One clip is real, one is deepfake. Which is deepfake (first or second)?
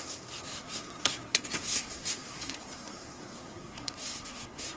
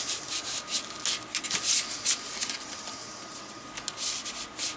first